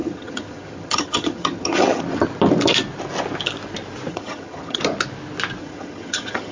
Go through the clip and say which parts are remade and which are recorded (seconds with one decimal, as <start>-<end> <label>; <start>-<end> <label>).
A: 0.0-2.0 remade; 2.0-4.1 recorded; 4.1-4.8 remade; 4.8-5.6 recorded; 5.6-6.5 remade